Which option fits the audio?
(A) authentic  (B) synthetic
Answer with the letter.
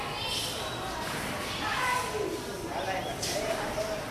A